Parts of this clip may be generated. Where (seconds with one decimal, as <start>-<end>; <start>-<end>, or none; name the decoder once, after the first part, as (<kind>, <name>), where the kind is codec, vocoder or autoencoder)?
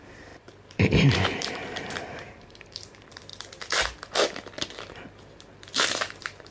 0.0-3.3 (vocoder, BigVGAN v2); 5.5-6.5